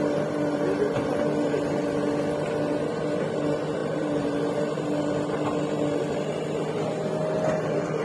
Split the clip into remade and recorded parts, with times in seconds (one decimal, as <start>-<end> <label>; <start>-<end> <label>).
0.0-8.0 recorded